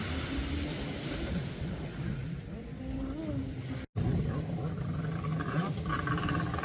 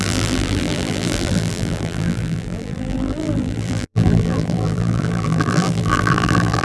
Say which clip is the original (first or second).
first